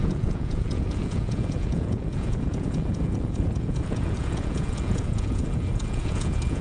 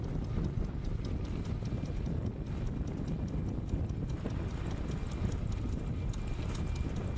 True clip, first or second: second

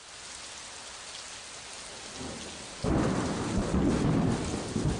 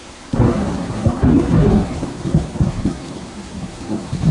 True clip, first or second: first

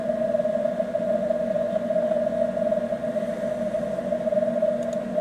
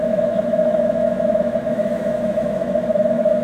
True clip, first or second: first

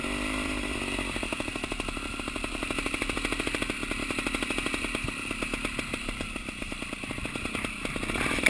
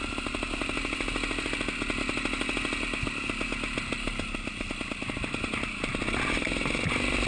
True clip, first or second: second